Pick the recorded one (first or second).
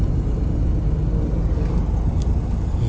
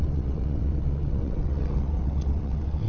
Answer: first